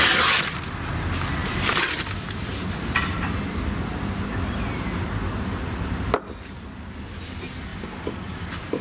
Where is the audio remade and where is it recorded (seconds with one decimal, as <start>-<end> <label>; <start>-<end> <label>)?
0.0-8.8 recorded